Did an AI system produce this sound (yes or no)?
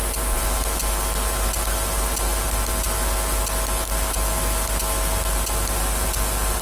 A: no